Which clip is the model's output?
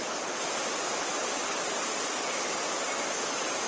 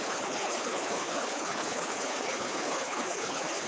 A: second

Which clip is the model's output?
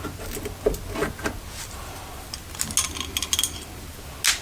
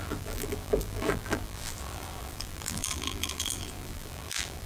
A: second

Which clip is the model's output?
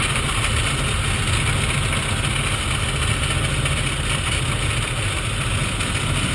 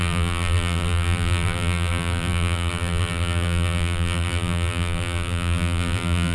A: second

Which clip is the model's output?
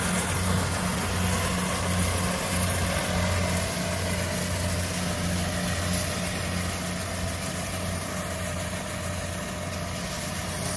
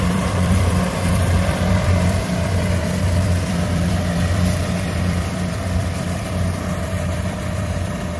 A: second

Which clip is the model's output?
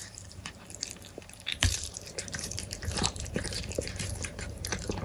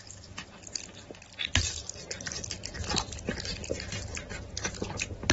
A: first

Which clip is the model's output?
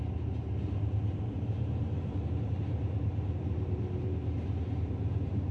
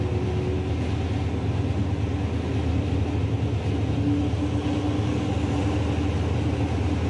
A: first